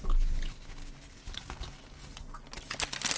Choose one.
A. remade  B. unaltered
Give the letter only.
B